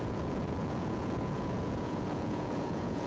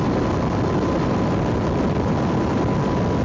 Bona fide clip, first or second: second